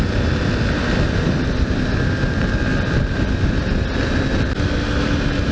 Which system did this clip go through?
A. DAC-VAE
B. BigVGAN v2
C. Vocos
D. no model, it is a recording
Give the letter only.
D